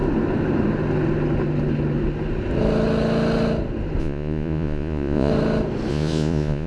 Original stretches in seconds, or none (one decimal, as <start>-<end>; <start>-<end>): 0.0-4.0; 5.3-5.9